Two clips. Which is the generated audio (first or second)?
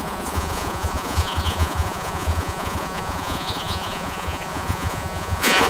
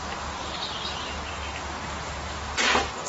first